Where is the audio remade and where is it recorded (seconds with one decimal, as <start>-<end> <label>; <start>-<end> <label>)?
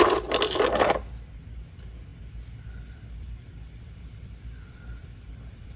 0.0-2.1 recorded; 2.1-5.8 remade